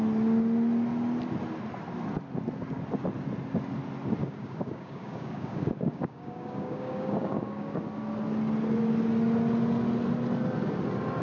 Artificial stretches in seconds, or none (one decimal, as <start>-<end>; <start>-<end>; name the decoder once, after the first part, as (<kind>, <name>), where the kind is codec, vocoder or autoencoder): 4.2-7.8 (codec, DAC)